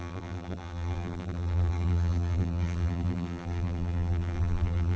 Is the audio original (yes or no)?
no